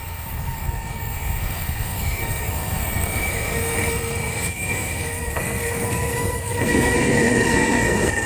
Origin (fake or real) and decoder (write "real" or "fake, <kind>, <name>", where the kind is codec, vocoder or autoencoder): fake, codec, SNAC